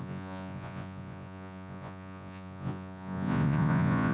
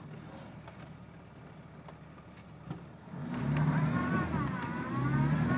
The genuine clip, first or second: second